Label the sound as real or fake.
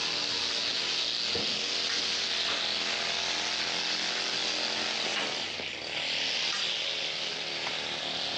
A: real